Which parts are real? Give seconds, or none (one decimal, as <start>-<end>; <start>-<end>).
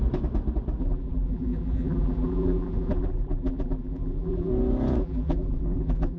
0.0-0.8; 4.5-5.0